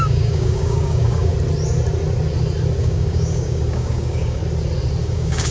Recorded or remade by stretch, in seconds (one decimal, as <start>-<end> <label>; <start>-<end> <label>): 0.0-1.3 remade; 1.3-2.8 recorded; 2.8-4.4 remade; 4.4-5.0 recorded; 5.0-5.5 remade

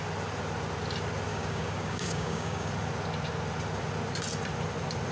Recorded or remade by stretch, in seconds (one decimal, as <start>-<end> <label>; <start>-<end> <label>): 0.0-1.3 recorded; 1.3-2.7 remade; 2.7-5.1 recorded

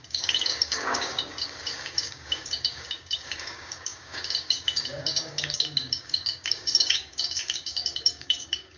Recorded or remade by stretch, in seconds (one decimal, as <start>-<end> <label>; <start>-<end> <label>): 0.0-8.8 remade

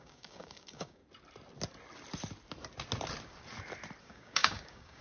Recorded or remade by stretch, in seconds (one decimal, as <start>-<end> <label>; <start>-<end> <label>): 0.0-1.0 remade; 1.0-4.0 recorded; 4.0-5.0 remade

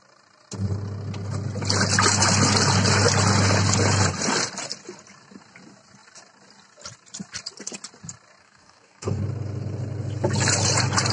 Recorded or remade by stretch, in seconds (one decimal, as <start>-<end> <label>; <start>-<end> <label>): 0.0-8.4 recorded; 8.4-9.2 remade; 9.2-11.1 recorded

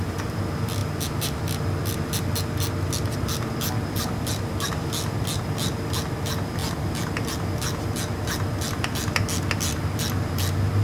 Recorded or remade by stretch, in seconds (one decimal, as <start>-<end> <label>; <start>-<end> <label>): 0.0-10.8 recorded

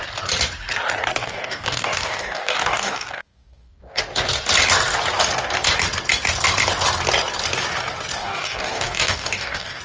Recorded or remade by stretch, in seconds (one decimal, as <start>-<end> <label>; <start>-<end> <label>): 0.0-1.2 recorded; 1.2-4.0 remade; 4.0-8.2 recorded; 8.2-9.8 remade